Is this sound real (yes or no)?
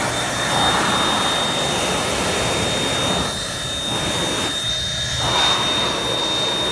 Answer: yes